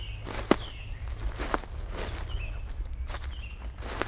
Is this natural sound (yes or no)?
yes